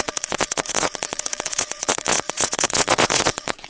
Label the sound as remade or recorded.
remade